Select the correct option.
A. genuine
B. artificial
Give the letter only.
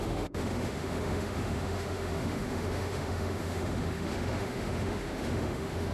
B